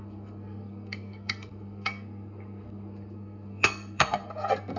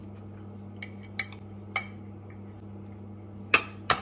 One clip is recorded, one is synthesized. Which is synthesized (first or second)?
first